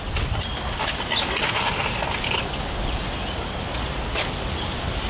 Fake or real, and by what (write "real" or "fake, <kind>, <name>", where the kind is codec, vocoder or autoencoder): real